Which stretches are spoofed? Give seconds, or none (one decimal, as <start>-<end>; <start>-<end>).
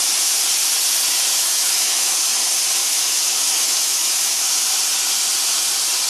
1.3-2.3; 2.8-4.4